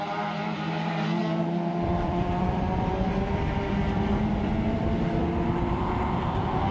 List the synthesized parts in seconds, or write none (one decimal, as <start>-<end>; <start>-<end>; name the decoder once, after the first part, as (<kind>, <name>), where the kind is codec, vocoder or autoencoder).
0.0-5.2 (vocoder, BigVGAN v2); 5.7-6.7